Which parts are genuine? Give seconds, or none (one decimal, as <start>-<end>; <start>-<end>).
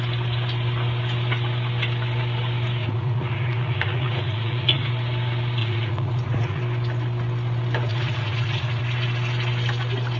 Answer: 0.0-2.8; 4.9-5.6; 6.6-7.9; 8.8-10.2